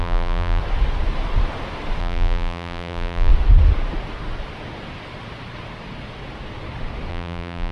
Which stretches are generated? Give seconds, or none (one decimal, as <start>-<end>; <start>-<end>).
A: 0.0-0.6; 2.0-3.3; 7.1-7.7